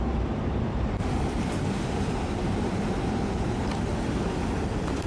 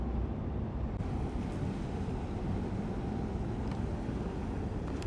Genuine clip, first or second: second